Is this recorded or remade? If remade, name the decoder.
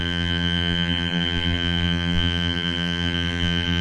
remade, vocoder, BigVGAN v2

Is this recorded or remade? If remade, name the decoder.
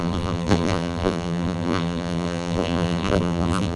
remade, vocoder, BigVGAN v2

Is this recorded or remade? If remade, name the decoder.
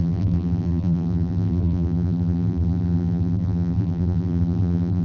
remade, vocoder, BigVGAN v2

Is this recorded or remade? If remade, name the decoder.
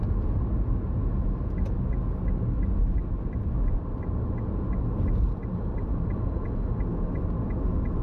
recorded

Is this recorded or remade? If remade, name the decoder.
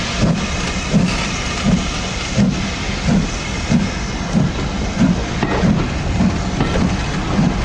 recorded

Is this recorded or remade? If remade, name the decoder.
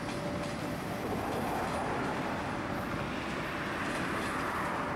recorded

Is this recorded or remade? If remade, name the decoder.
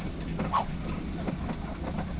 recorded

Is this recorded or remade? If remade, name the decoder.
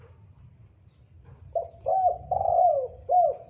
recorded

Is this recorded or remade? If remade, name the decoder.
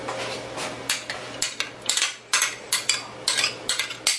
recorded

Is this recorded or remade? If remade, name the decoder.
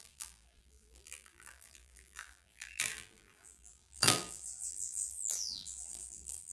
remade, vocoder, BigVGAN v2